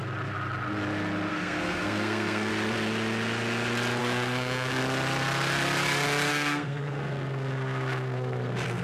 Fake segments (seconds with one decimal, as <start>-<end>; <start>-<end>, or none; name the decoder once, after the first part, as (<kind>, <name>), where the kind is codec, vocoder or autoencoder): 1.3-2.5 (codec, SNAC); 4.0-4.8; 6.3-8.8